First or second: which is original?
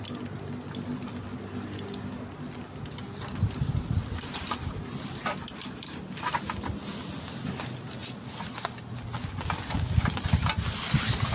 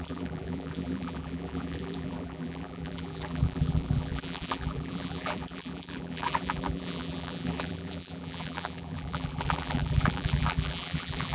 first